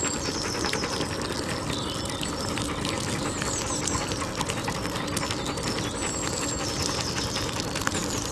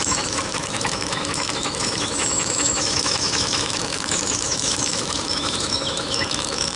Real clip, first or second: first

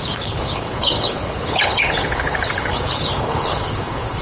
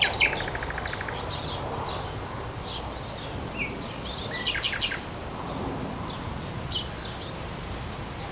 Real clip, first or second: second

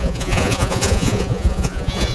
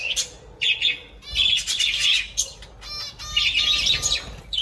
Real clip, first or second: second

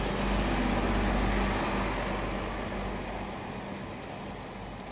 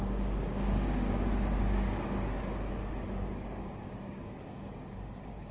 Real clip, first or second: first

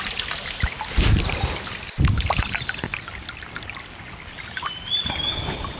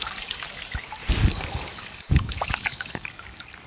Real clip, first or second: first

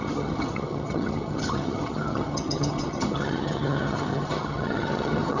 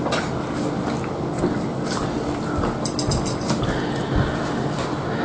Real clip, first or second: second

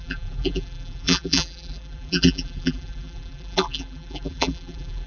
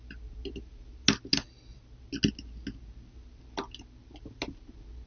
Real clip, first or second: second